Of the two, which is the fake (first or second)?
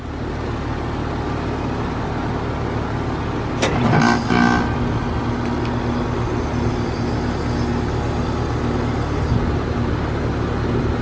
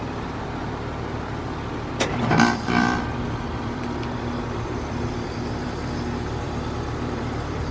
second